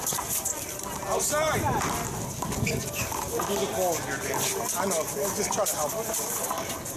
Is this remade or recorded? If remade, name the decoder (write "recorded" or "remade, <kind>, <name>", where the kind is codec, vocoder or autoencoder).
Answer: recorded